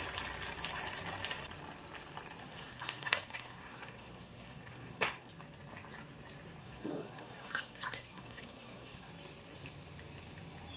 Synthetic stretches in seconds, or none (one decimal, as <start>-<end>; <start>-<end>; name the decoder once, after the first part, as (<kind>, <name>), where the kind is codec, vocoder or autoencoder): 2.4-5.3 (codec, SNAC); 6.6-9.1